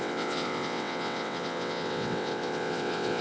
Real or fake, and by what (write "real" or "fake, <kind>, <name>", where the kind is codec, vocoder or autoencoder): fake, vocoder, WaveNeXt